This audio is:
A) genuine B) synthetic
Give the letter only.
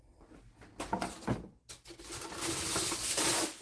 A